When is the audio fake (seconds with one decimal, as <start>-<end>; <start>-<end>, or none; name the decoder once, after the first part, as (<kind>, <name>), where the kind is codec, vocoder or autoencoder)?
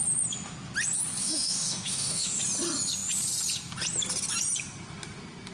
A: 1.2-2.4 (autoencoder, DAC-VAE)